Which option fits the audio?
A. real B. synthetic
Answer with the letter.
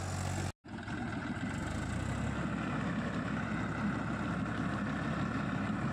A